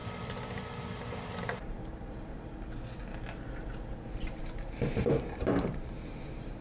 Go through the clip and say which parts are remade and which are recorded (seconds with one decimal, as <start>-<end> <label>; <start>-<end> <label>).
0.0-2.2 remade; 2.2-4.4 recorded; 4.4-6.6 remade